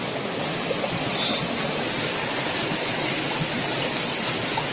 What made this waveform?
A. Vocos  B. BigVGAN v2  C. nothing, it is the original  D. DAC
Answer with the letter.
C